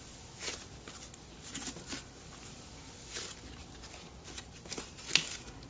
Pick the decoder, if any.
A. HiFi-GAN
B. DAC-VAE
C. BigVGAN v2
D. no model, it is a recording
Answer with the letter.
D